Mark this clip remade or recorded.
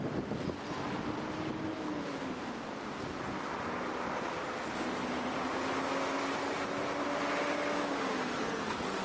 recorded